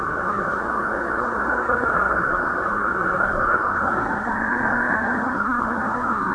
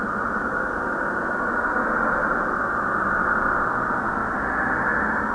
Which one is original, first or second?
second